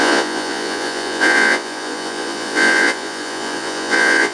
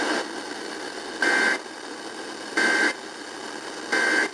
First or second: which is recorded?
second